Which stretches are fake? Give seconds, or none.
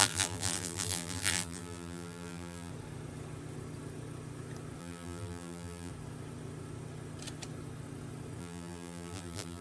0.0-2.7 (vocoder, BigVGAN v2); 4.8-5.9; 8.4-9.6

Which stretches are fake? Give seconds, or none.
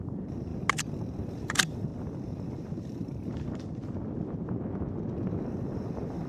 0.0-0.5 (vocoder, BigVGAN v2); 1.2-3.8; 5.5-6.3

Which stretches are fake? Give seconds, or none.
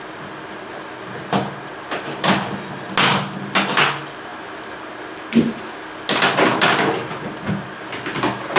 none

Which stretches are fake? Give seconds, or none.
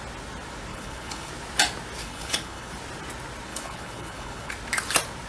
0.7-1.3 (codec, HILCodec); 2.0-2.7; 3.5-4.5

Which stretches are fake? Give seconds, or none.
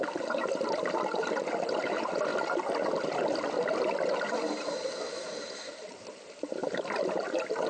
none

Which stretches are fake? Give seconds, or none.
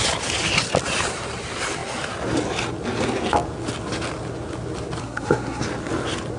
5.0-5.6 (codec, SNAC)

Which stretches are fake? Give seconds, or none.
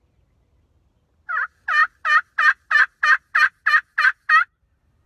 none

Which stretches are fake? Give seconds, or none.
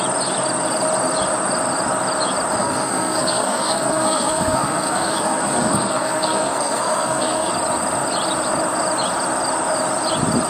2.6-7.5 (codec, SNAC)